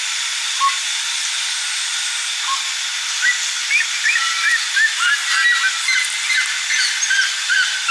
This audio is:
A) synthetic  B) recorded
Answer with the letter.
B